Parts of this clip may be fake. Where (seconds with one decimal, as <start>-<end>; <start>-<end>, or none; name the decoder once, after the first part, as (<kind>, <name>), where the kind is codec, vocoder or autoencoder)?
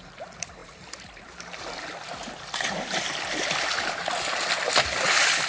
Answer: none